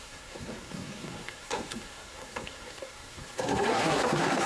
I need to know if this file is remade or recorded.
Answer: remade